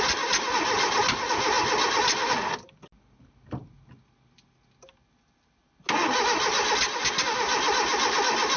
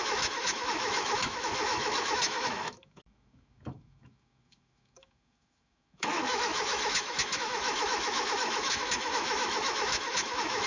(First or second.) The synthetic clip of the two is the second